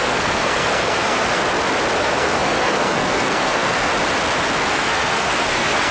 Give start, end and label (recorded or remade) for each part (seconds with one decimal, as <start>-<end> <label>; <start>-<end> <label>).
0.0-1.4 remade; 1.4-2.0 recorded; 2.0-3.9 remade; 3.9-4.7 recorded; 4.7-5.9 remade